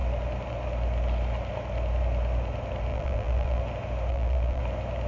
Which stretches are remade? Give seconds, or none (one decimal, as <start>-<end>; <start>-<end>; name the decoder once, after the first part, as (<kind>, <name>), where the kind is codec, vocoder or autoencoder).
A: 2.9-3.6 (vocoder, BigVGAN v2); 4.1-4.6